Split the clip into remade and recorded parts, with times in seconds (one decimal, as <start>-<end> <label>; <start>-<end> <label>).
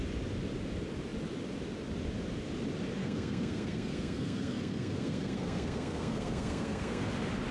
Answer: 0.0-3.0 recorded; 3.0-7.1 remade; 7.1-7.5 recorded